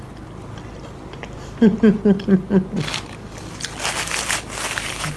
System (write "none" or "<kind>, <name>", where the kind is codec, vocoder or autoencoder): none